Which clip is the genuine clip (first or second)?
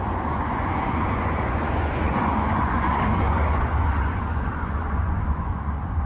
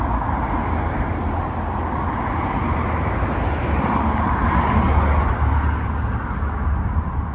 second